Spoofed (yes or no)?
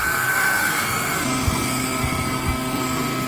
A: yes